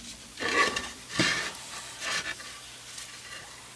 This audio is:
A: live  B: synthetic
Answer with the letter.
A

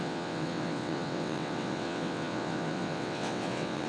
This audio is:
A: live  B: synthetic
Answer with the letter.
B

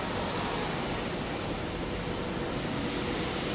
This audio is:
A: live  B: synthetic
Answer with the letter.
A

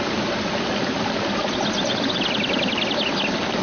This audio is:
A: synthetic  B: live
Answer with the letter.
B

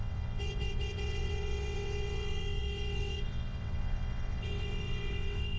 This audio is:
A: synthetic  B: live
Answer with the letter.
A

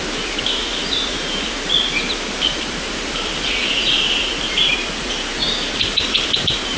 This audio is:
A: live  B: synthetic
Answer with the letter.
A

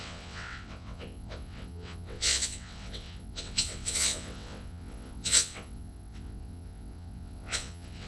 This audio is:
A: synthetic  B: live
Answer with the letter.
A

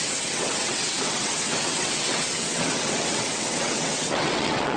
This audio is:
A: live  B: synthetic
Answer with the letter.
B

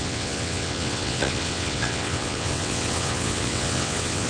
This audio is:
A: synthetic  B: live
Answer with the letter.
A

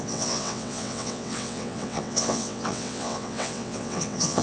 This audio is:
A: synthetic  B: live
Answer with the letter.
A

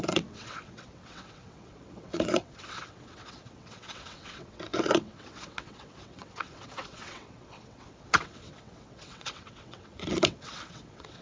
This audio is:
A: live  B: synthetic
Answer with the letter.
B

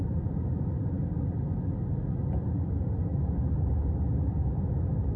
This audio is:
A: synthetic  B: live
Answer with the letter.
B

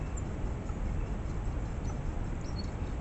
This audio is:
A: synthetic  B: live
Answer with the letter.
B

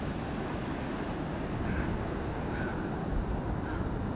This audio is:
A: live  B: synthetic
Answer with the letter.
A